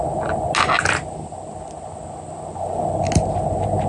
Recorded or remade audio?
recorded